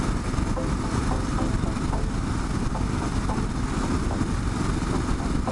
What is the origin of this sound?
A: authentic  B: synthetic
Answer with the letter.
A